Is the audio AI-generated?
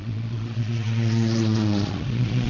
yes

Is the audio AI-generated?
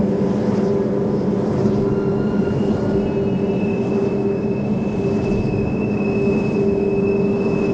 no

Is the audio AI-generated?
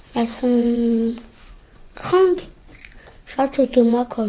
yes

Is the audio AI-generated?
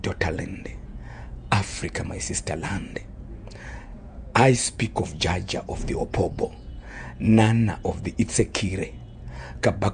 yes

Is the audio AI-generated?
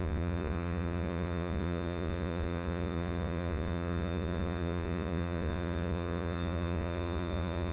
yes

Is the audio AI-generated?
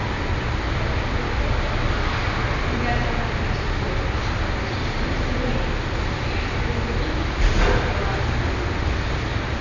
no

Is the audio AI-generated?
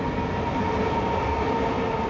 no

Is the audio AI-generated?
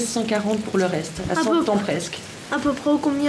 no